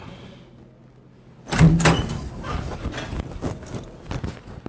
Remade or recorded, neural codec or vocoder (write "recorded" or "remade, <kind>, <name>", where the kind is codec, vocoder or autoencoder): recorded